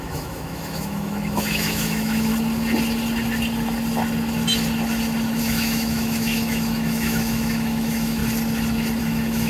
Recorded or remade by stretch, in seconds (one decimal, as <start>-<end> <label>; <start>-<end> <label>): 0.0-2.3 remade; 2.3-5.4 recorded; 5.4-8.2 remade; 8.2-9.0 recorded; 9.0-9.5 remade

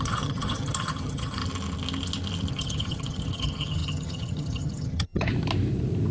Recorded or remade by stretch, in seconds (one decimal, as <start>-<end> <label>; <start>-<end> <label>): 0.0-1.4 remade; 1.4-2.5 recorded; 2.5-5.3 remade; 5.3-6.1 recorded

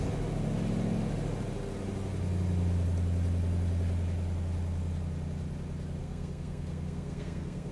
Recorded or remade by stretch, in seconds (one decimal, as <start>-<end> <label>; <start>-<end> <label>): 0.0-6.0 recorded; 6.0-7.7 remade